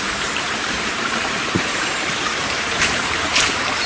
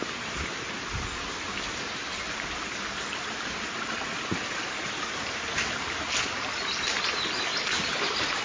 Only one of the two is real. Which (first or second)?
second